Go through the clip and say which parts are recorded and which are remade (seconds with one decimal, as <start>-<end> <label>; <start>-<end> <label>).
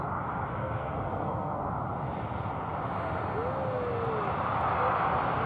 0.0-0.6 recorded; 0.6-1.7 remade; 1.7-5.5 recorded